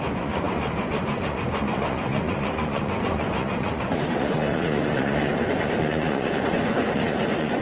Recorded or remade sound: remade